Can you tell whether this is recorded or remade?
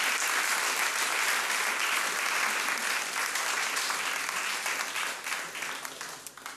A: recorded